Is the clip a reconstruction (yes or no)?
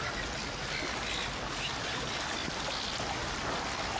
no